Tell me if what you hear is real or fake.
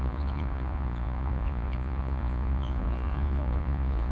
fake